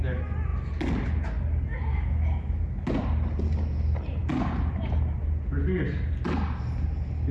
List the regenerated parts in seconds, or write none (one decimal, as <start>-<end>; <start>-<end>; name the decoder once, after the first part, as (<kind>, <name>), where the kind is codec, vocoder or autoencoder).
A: 1.9-2.6 (autoencoder, DAC-VAE)